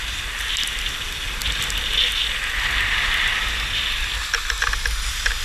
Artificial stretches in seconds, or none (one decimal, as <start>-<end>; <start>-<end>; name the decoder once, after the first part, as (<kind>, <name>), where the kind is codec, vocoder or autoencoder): none

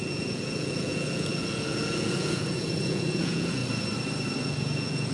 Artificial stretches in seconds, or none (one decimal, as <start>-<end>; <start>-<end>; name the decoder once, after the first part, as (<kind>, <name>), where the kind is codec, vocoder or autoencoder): 0.0-3.6 (vocoder, Vocos); 4.4-5.1

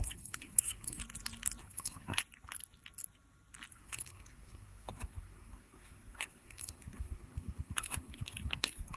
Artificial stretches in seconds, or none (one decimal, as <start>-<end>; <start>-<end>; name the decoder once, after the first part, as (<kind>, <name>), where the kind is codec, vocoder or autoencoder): 0.0-1.0 (codec, SNAC); 1.6-2.2; 3.7-9.0

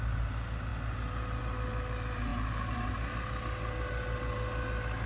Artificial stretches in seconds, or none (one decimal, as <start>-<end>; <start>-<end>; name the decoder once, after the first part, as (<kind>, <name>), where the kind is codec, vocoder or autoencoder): 2.3-2.9 (vocoder, BigVGAN v2)